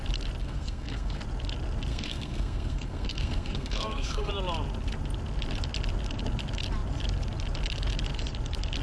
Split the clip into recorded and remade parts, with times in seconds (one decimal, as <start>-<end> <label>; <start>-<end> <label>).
0.0-0.4 recorded; 0.4-1.2 remade; 1.2-1.9 recorded; 1.9-4.3 remade; 4.3-8.8 recorded